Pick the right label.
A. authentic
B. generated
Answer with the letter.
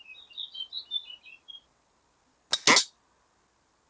A